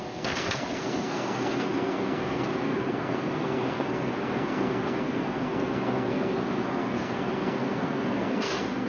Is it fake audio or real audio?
fake